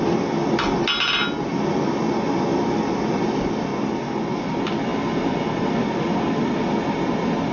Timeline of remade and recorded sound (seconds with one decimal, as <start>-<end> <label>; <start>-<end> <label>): 0.0-3.7 recorded; 3.7-4.2 remade; 4.2-4.9 recorded; 4.9-6.6 remade; 6.6-7.5 recorded